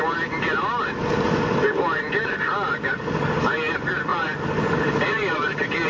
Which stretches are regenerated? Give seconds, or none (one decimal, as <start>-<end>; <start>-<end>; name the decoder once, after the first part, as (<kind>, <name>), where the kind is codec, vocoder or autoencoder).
none